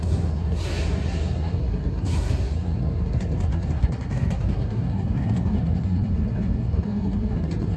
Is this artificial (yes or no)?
yes